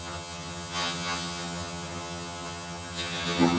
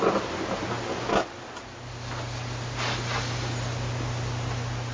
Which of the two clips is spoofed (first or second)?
first